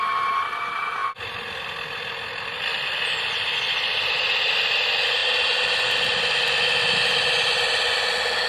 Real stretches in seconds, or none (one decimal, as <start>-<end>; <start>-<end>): 0.0-8.5